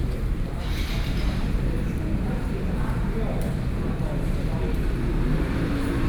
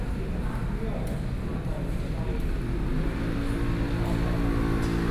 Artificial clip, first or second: first